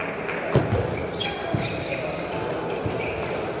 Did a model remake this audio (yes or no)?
no